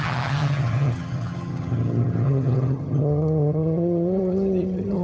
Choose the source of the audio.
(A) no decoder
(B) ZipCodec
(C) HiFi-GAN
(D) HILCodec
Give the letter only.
C